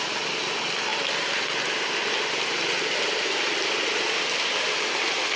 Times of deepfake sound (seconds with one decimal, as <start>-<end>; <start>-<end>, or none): none